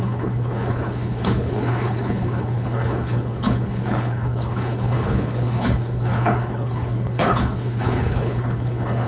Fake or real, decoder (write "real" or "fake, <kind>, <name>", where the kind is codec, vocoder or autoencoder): fake, codec, HILCodec